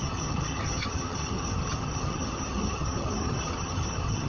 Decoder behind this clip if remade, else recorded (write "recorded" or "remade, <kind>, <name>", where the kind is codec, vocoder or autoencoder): remade, vocoder, HiFi-GAN